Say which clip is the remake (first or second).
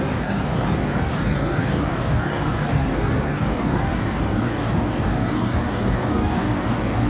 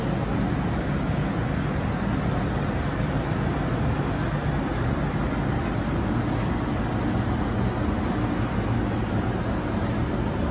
first